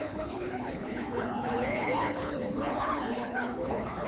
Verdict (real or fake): fake